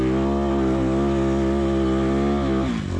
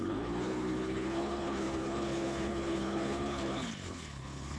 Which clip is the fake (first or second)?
second